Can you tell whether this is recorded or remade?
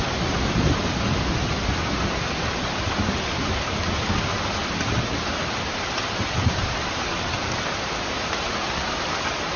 recorded